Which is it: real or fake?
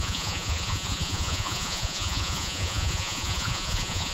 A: fake